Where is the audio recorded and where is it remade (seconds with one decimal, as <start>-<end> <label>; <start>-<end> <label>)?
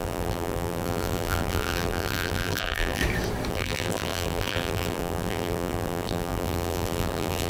0.0-3.0 remade; 3.0-3.5 recorded; 3.5-7.5 remade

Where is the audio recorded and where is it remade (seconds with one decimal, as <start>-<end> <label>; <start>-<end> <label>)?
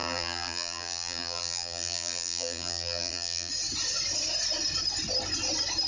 0.0-3.5 remade; 3.5-5.9 recorded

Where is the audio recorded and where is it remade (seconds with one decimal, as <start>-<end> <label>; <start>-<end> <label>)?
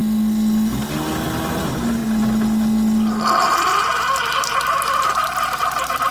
0.0-1.6 recorded; 1.6-2.0 remade; 2.0-6.1 recorded